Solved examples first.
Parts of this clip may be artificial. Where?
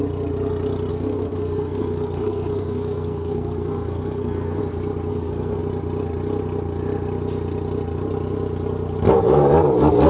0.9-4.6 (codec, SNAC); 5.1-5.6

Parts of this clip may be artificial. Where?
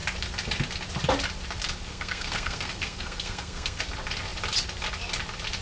1.9-3.8 (codec, SNAC)